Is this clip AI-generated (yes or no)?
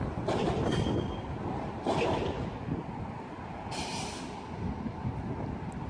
no